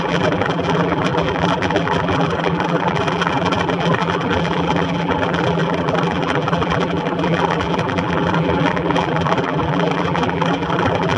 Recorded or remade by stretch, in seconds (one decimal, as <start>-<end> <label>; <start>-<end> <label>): 0.0-11.2 remade